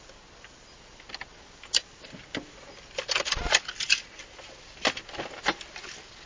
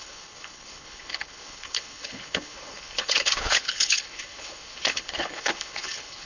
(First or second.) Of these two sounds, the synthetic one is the second